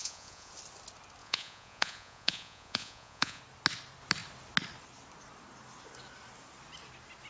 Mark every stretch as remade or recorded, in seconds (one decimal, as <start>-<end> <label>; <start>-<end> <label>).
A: 0.0-0.5 remade; 0.5-1.2 recorded; 1.2-3.4 remade; 3.4-7.3 recorded